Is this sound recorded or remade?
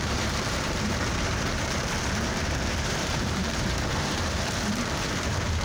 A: remade